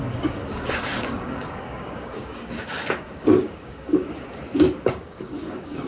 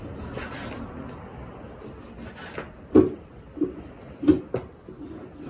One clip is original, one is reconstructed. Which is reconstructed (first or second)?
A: first